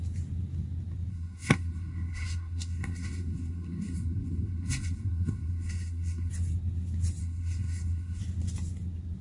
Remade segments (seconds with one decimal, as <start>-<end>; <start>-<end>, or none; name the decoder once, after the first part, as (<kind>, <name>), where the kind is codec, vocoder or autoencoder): 1.1-6.3 (codec, SNAC); 7.2-8.2